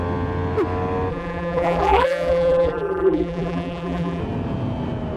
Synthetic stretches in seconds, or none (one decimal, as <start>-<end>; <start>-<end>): 1.1-4.2